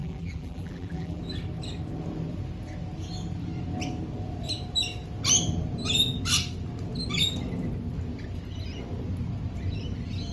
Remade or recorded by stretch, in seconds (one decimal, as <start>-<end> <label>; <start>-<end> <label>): 0.0-1.2 remade; 1.2-10.3 recorded